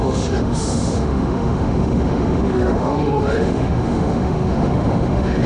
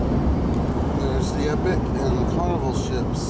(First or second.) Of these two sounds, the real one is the second